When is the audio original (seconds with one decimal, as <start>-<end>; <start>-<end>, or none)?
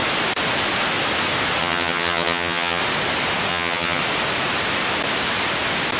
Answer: 0.0-1.6; 2.8-3.5; 4.0-6.0